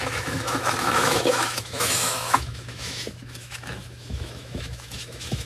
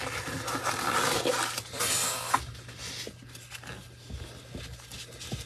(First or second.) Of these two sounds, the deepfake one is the first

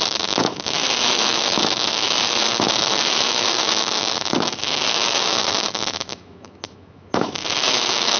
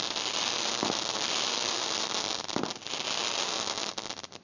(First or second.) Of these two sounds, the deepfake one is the first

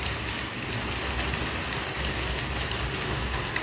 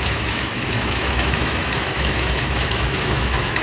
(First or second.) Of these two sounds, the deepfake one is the second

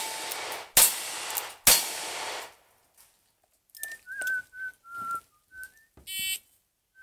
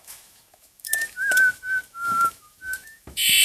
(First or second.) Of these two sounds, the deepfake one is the second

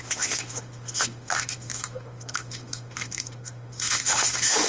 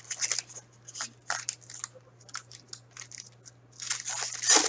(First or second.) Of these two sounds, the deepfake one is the first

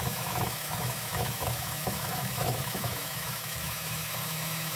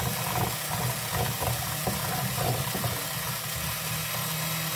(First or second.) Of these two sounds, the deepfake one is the first